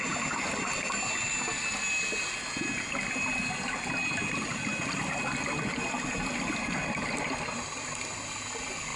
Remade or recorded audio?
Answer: recorded